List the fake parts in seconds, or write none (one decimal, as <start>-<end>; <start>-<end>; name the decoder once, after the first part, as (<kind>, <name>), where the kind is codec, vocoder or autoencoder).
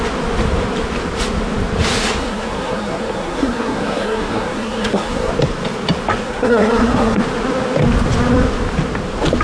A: 2.2-5.3 (codec, SNAC); 6.2-7.2